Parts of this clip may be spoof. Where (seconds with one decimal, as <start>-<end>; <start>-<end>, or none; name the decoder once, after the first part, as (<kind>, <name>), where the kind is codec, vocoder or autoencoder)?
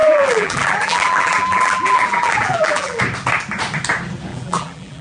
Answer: 0.0-3.0 (vocoder, BigVGAN v2); 4.3-5.0